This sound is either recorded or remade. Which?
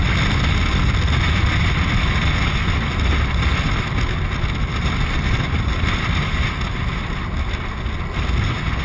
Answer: recorded